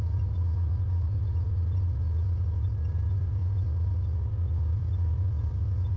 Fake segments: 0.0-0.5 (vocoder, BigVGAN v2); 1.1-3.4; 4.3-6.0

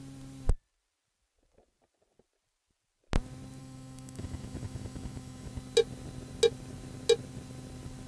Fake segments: 3.6-5.5 (autoencoder, DAC-VAE)

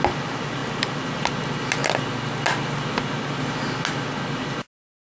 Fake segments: none